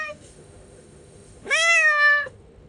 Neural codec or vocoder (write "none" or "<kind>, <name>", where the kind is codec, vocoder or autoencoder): autoencoder, DAC-VAE